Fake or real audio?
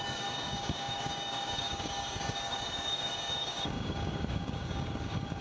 fake